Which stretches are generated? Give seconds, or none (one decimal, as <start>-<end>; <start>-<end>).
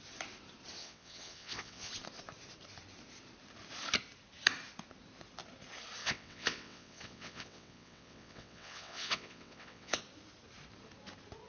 0.8-1.9; 6.0-10.0